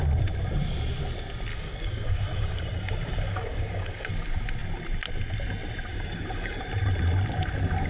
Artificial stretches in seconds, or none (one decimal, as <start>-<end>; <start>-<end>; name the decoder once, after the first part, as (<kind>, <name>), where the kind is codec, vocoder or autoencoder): 1.5-4.1 (codec, DAC); 5.9-6.6